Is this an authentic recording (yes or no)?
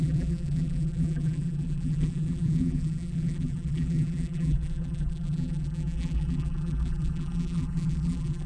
no